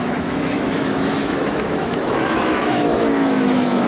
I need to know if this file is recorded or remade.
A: remade